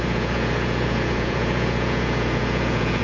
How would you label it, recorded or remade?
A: remade